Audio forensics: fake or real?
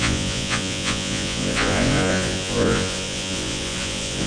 fake